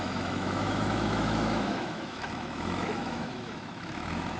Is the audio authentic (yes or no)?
no